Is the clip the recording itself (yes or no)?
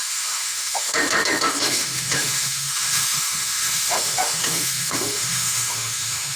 no